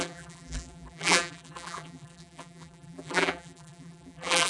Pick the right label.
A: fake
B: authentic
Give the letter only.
A